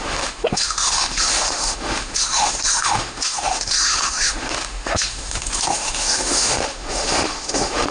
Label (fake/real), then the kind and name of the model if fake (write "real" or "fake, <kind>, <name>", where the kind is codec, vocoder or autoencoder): fake, autoencoder, DAC-VAE